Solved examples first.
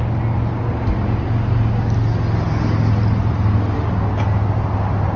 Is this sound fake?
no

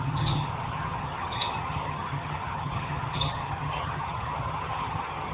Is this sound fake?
yes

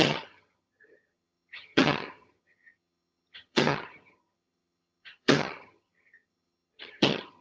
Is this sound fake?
yes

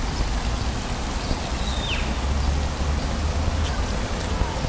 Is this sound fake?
no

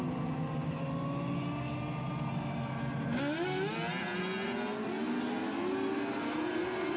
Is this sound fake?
no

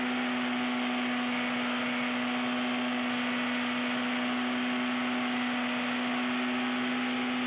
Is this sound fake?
no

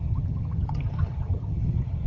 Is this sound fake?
yes